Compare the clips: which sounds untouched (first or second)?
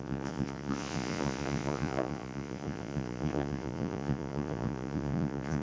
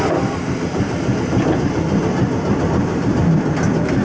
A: second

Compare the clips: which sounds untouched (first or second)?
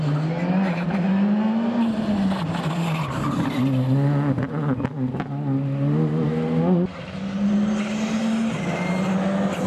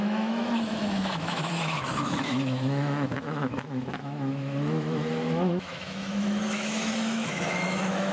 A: first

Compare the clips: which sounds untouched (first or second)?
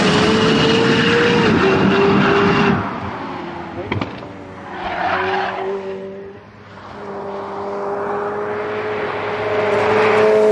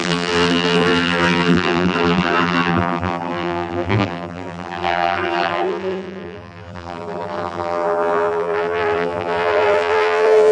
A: first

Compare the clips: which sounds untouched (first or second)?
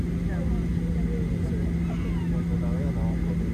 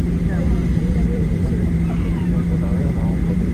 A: first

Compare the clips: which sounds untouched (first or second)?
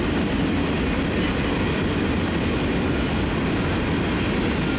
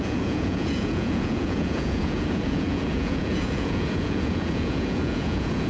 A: first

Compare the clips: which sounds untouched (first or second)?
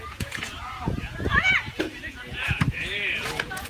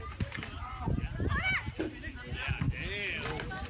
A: second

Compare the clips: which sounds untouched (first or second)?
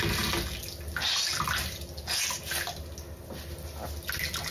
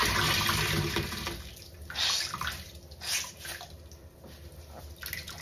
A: first